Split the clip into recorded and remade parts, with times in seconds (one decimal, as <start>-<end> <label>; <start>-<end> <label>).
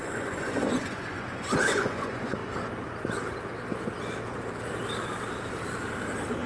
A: 0.0-2.4 remade; 2.4-6.5 recorded